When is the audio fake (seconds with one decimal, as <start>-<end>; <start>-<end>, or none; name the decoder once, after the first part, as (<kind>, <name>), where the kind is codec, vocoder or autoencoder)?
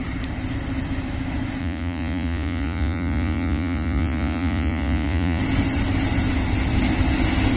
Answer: 1.6-5.4 (vocoder, Vocos)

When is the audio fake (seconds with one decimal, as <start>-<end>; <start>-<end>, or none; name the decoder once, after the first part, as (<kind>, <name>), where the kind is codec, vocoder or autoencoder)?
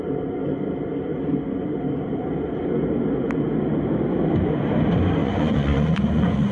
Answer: 5.2-6.5 (vocoder, Vocos)